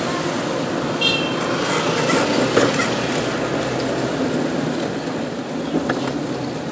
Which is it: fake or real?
real